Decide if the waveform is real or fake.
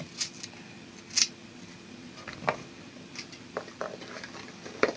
real